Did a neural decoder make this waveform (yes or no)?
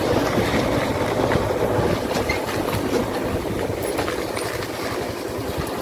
no